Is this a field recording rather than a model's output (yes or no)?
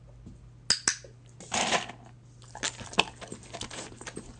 yes